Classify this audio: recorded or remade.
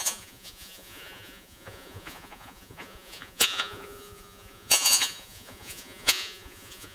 remade